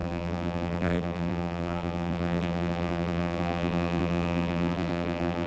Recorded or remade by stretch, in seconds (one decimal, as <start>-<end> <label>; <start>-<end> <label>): 0.0-5.5 remade